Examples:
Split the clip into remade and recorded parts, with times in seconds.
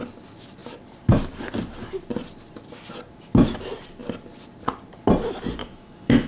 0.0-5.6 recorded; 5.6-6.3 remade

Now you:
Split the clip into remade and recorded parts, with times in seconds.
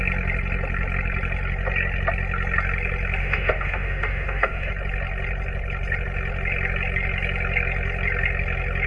0.0-3.2 recorded; 3.2-4.7 remade; 4.7-8.9 recorded